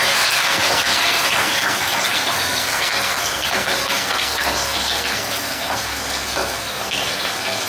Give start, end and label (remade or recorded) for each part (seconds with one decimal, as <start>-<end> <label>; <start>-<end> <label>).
0.0-7.7 remade